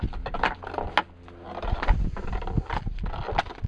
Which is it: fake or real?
real